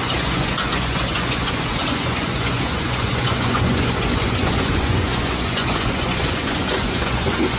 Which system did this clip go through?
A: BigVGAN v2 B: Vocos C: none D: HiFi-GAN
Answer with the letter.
B